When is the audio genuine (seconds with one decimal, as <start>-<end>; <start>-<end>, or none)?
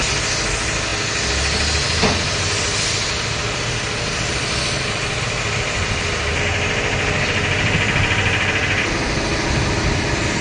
0.0-10.4